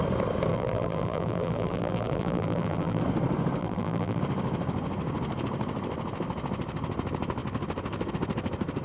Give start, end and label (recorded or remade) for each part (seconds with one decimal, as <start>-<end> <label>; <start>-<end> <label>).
0.0-0.5 recorded; 0.5-3.0 remade; 3.0-3.6 recorded; 3.6-4.2 remade; 4.2-8.8 recorded